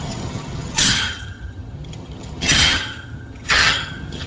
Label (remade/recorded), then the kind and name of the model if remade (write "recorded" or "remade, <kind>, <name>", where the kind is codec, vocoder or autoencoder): remade, vocoder, HiFi-GAN